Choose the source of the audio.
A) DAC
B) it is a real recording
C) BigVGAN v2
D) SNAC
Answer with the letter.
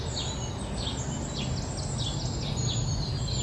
B